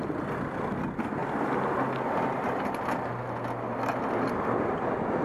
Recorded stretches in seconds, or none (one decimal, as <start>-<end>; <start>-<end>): 0.0-5.2